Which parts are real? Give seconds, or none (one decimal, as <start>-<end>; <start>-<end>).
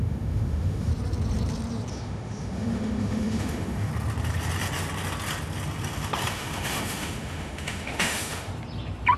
0.9-1.9; 3.9-6.3; 8.5-9.2